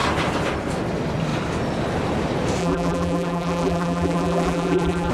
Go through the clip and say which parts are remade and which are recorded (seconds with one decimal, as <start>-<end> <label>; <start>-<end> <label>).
0.0-2.6 recorded; 2.6-5.1 remade